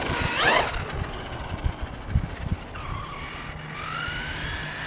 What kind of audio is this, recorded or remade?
recorded